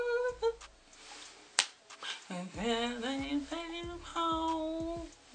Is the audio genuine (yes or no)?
yes